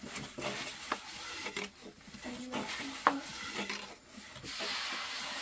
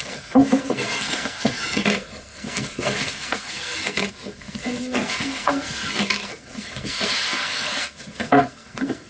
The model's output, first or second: second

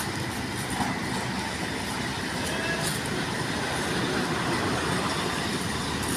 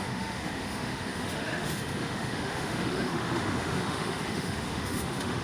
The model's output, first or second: second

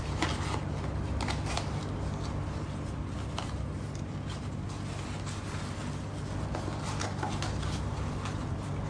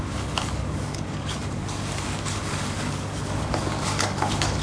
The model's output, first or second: second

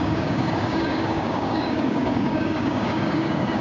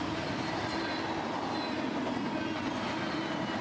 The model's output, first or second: first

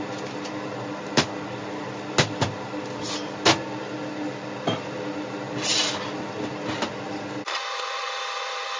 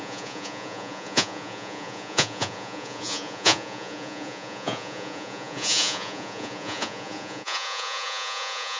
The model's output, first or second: second